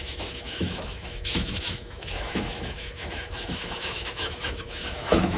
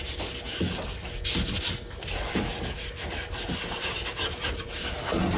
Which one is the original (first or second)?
second